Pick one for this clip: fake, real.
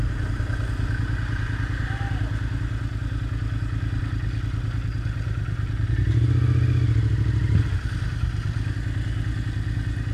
real